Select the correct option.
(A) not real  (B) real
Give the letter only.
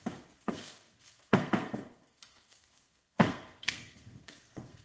A